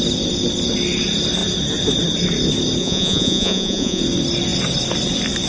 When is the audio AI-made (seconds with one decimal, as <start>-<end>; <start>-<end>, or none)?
2.8-4.0